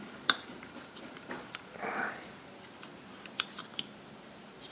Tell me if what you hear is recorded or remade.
recorded